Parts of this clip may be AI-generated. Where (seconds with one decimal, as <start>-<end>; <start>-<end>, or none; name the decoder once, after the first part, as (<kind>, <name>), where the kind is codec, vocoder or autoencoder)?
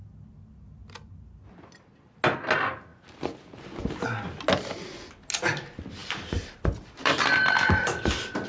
none